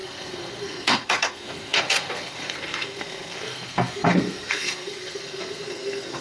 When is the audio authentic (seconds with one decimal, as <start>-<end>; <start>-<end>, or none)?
none